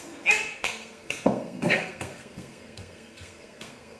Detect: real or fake fake